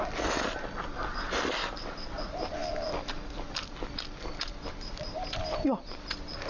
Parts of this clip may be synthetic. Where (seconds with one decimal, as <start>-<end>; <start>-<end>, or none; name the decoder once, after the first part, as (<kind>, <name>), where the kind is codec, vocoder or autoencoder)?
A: none